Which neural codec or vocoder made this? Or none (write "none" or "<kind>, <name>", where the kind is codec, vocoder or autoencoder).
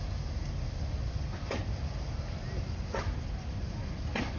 none